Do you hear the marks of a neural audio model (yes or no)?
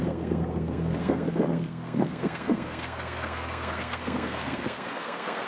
yes